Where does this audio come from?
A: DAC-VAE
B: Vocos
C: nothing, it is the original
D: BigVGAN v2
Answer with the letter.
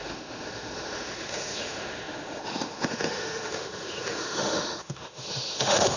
A